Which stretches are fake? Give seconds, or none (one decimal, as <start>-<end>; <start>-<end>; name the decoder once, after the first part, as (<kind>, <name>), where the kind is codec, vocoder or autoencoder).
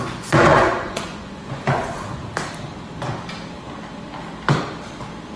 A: 0.0-2.2 (vocoder, Vocos)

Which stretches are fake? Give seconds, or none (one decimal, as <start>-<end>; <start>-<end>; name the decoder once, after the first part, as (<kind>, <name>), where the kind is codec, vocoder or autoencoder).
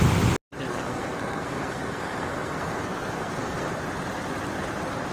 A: 0.7-3.8 (codec, SNAC)